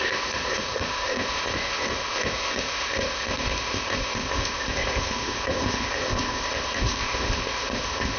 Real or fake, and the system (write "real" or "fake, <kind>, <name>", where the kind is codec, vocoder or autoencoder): fake, codec, ZipCodec